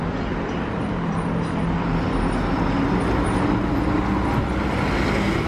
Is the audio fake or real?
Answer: real